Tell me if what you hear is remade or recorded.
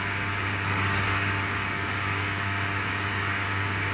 remade